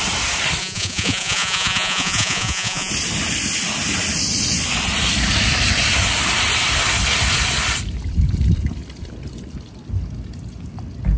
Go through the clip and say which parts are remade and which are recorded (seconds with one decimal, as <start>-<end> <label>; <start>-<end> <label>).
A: 0.0-0.6 recorded; 0.6-2.9 remade; 2.9-11.2 recorded

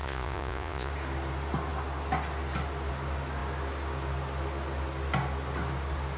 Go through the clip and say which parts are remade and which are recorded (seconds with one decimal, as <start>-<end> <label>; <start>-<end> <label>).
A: 0.0-0.9 remade; 0.9-6.2 recorded